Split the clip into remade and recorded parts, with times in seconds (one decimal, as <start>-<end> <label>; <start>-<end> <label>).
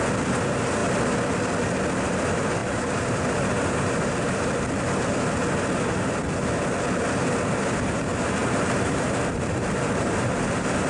0.0-2.6 recorded; 2.6-4.5 remade; 4.5-8.4 recorded; 8.4-10.9 remade